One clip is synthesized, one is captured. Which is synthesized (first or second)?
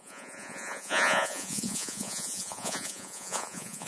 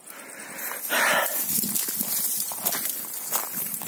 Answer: first